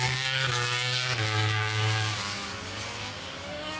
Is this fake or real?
fake